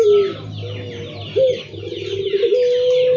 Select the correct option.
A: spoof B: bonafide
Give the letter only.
B